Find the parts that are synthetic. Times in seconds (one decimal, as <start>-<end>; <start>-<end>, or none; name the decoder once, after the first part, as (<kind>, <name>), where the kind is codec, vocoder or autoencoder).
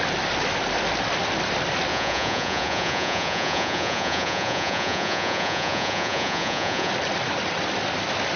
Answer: 1.9-6.9 (vocoder, Vocos)